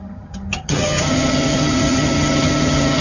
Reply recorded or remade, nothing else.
remade